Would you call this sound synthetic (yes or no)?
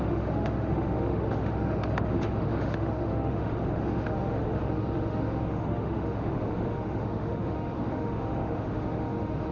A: yes